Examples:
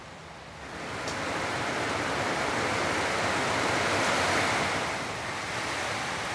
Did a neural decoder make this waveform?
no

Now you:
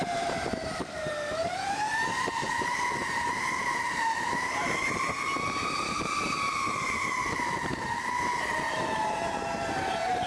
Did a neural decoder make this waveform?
yes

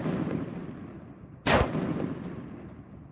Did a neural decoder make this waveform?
yes